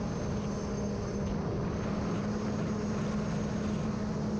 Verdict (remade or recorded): recorded